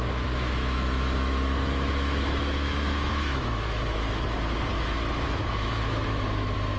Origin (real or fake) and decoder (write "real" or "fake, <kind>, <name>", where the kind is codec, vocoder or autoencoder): fake, autoencoder, DAC-VAE